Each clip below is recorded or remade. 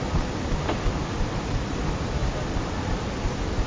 recorded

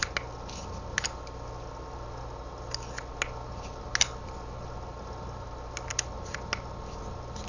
recorded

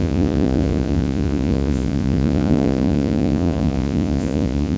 remade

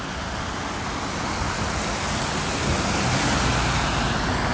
recorded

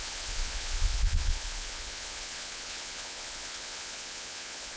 remade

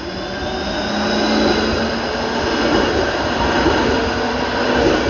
recorded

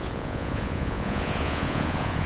remade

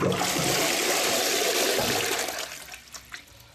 recorded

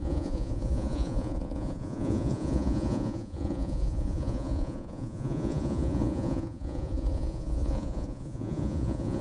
remade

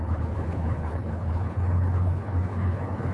remade